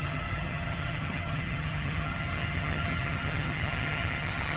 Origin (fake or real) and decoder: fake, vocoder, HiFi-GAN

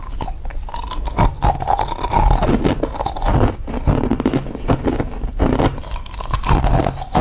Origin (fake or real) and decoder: real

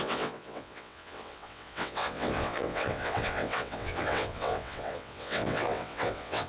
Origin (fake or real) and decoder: fake, vocoder, WaveNeXt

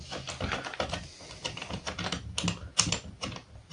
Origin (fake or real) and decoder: real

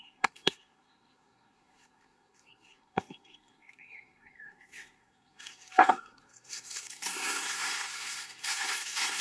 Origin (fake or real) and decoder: fake, codec, SNAC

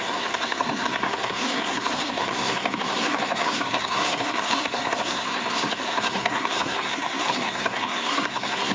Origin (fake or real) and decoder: fake, codec, SNAC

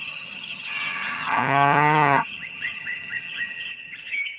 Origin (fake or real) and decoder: fake, vocoder, HiFi-GAN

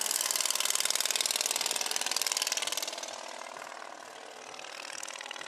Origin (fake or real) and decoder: real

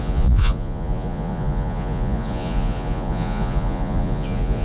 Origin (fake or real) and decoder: fake, vocoder, Vocos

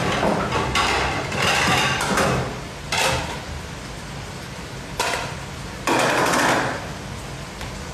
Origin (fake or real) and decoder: real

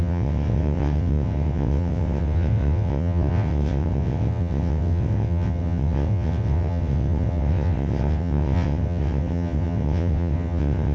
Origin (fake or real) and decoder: fake, vocoder, WaveNeXt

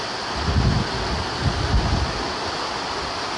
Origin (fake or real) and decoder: real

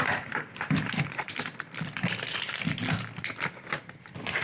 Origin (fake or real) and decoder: fake, vocoder, BigVGAN v2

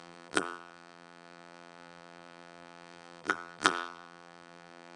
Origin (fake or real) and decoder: fake, vocoder, BigVGAN v2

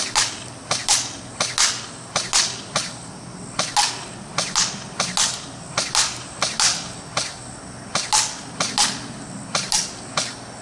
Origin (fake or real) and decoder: real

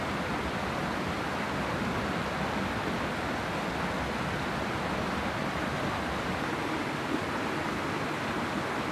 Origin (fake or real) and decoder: real